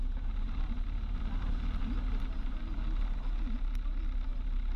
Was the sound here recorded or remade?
recorded